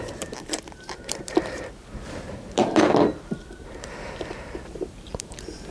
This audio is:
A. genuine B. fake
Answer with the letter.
B